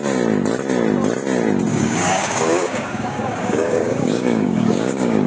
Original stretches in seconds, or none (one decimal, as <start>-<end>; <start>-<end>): 0.0-1.7